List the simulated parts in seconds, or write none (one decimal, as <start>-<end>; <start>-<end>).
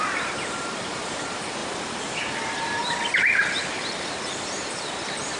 0.0-1.6; 2.2-2.8; 3.6-5.4